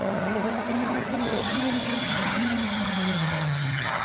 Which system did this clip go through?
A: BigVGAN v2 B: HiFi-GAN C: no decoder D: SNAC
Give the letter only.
B